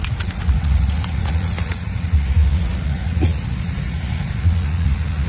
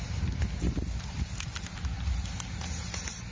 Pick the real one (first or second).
second